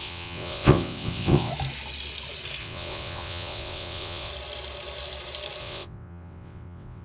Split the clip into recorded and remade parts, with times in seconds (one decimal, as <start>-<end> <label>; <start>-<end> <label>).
0.0-1.5 remade; 1.5-2.6 recorded; 2.6-4.3 remade; 4.3-5.6 recorded; 5.6-7.0 remade